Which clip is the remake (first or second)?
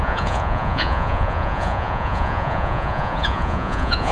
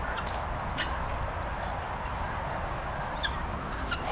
first